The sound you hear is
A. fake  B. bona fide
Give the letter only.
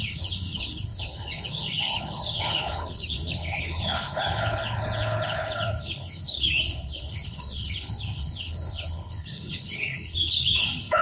A